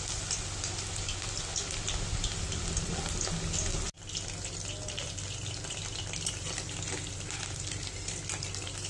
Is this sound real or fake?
real